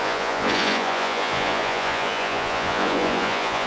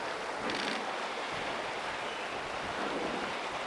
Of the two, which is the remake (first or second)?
first